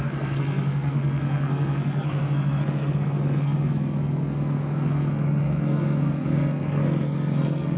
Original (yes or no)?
no